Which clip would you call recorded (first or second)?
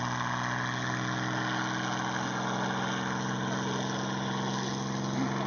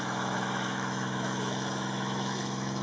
first